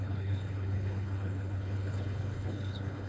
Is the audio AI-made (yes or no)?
yes